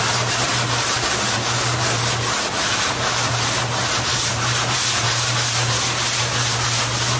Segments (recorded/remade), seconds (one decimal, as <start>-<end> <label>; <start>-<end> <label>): 0.0-7.2 remade